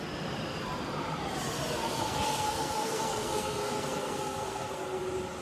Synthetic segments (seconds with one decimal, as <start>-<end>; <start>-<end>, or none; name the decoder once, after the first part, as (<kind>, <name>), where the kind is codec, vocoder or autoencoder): 1.8-5.0 (codec, SNAC)